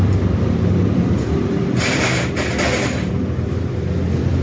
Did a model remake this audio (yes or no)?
yes